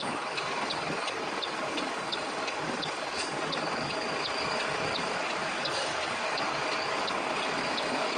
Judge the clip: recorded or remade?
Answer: remade